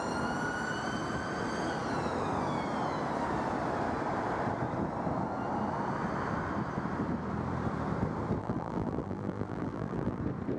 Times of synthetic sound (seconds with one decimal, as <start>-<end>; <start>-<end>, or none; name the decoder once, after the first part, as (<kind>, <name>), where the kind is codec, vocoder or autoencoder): 8.4-10.2 (vocoder, BigVGAN v2)